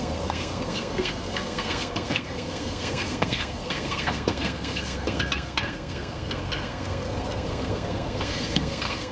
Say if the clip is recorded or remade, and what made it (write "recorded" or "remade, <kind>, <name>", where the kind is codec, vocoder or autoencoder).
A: remade, codec, SNAC